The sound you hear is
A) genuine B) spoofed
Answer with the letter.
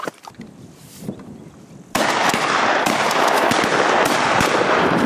B